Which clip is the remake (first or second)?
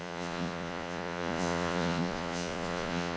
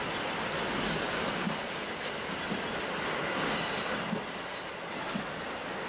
first